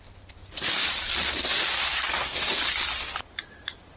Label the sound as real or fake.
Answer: real